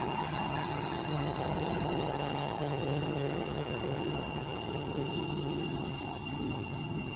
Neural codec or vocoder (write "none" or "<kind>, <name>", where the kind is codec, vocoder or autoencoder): vocoder, HiFi-GAN